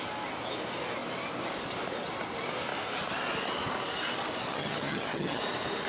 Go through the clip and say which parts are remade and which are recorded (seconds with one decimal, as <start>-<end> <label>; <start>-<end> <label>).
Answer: 0.0-4.5 recorded; 4.5-5.4 remade; 5.4-5.9 recorded